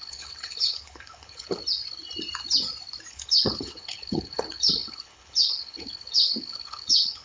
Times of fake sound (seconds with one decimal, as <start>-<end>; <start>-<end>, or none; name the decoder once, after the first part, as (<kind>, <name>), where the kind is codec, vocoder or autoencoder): 0.0-1.6 (codec, HILCodec); 3.1-7.2